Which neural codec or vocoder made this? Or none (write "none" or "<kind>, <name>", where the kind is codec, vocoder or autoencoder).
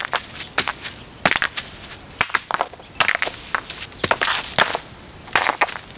none